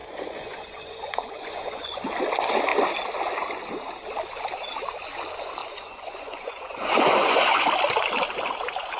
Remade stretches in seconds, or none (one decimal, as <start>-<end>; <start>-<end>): 0.0-2.1; 5.6-7.7